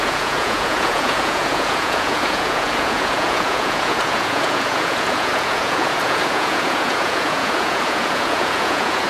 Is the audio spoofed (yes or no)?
yes